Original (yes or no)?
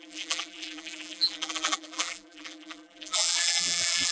no